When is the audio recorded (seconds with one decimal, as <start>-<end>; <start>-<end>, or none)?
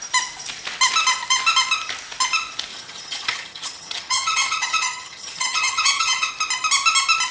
0.0-2.7; 6.3-7.3